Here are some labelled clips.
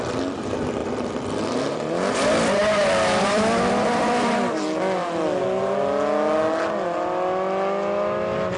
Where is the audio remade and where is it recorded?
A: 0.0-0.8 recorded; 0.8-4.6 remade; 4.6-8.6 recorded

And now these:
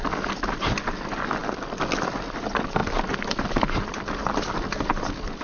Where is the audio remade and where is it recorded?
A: 0.0-5.4 recorded

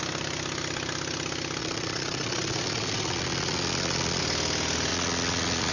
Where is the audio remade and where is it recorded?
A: 0.0-1.6 recorded; 1.6-4.2 remade; 4.2-4.9 recorded; 4.9-5.7 remade

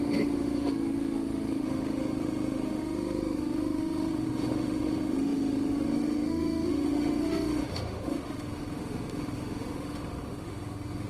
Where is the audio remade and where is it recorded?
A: 0.0-11.1 remade